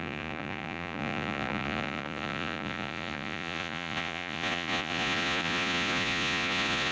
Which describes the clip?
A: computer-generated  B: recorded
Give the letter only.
A